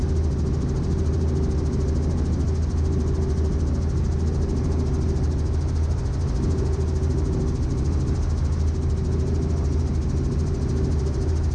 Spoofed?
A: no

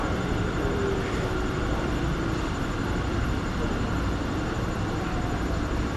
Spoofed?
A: yes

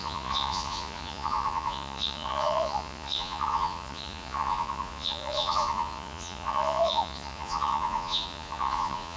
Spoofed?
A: yes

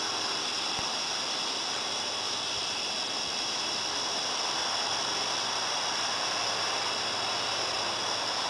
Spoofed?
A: no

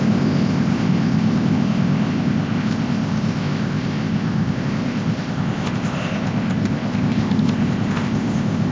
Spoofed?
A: yes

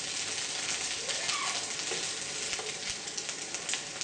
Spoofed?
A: no